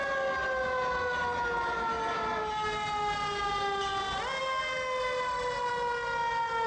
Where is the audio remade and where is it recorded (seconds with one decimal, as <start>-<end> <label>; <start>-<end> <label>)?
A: 0.0-6.7 recorded